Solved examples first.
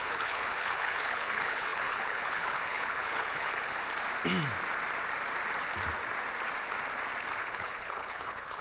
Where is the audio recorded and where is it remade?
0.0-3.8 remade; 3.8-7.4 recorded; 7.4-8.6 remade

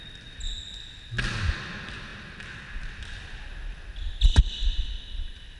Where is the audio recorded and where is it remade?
0.0-5.6 recorded

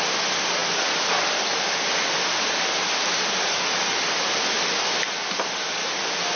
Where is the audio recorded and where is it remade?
0.0-6.4 recorded

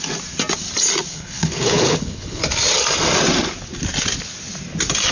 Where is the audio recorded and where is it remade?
0.0-1.1 recorded; 1.1-2.4 remade; 2.4-5.1 recorded

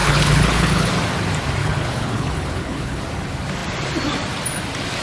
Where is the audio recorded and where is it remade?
0.0-0.9 remade; 0.9-1.6 recorded; 1.6-3.0 remade; 3.0-5.0 recorded

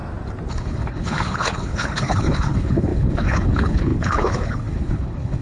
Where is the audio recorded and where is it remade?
0.0-0.5 recorded; 0.5-5.4 remade

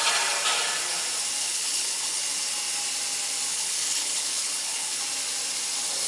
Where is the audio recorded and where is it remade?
0.0-1.4 recorded; 1.4-2.2 remade; 2.2-3.5 recorded; 3.5-5.0 remade; 5.0-6.1 recorded